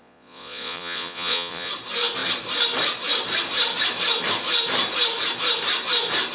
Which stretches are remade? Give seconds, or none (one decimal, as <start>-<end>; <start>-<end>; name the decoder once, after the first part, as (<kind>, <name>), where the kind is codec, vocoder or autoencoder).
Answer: 0.0-1.7 (vocoder, Vocos)